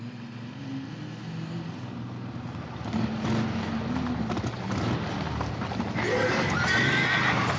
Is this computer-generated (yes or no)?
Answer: no